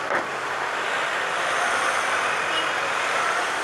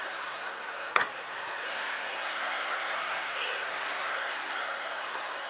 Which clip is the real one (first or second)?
first